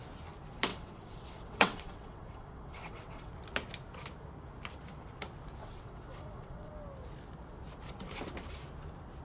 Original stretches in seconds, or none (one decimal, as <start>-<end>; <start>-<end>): 0.0-0.7; 3.3-5.6; 6.7-9.2